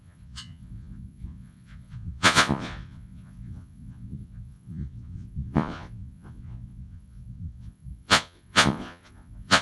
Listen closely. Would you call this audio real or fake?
fake